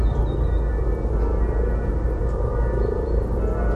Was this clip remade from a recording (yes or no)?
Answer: no